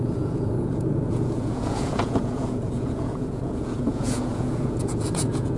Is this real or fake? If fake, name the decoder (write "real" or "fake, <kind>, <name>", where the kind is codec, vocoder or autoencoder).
fake, vocoder, Vocos